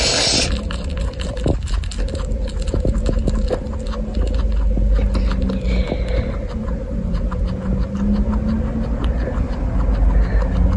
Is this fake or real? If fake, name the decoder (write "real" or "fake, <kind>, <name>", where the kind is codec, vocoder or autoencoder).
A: real